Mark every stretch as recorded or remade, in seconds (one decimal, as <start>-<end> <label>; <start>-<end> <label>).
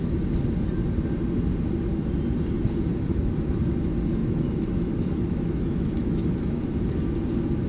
0.0-2.9 recorded; 2.9-3.6 remade; 3.6-4.2 recorded; 4.2-6.6 remade; 6.6-7.7 recorded